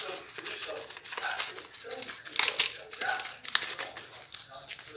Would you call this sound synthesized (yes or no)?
no